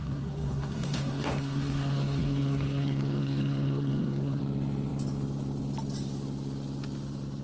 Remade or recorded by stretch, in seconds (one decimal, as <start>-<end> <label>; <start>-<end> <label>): 0.0-4.4 remade; 4.4-7.4 recorded